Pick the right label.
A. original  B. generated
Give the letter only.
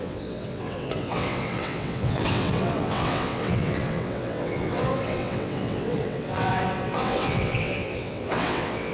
B